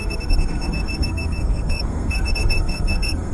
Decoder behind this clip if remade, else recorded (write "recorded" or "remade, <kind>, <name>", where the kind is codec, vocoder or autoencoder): remade, codec, SNAC